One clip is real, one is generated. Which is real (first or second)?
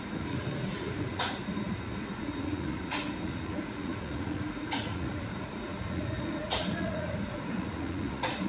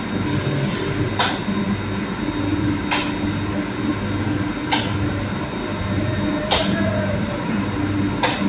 second